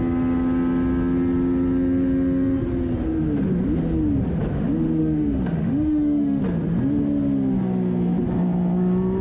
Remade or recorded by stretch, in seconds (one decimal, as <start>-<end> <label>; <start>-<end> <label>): 0.0-5.0 recorded; 5.0-6.4 remade; 6.4-9.2 recorded